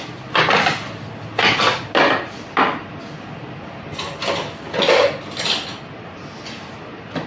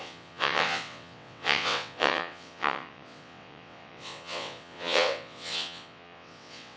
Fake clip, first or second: second